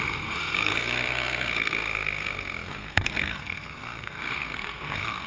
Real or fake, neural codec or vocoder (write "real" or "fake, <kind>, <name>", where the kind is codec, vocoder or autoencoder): fake, codec, SNAC